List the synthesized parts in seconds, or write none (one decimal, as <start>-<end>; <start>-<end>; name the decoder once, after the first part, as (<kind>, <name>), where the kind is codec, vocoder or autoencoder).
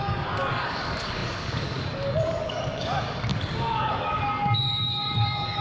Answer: 0.0-5.6 (codec, DAC)